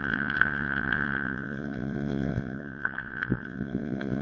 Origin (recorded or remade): remade